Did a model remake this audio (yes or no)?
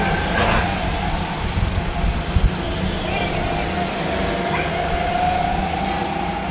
no